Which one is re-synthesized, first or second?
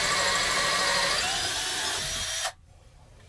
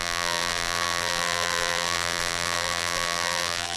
second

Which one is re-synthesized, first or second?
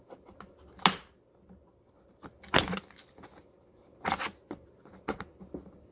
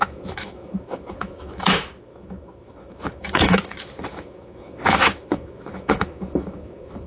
second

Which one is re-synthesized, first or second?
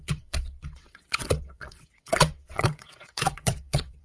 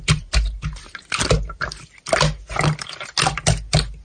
first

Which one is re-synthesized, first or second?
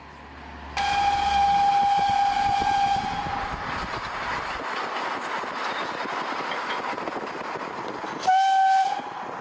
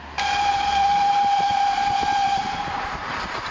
second